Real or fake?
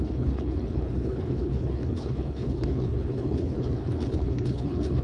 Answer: fake